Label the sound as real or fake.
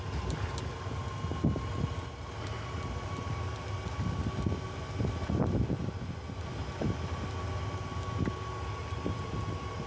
real